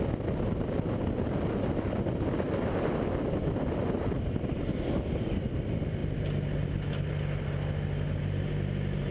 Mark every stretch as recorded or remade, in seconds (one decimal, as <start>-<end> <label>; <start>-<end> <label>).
0.0-9.1 recorded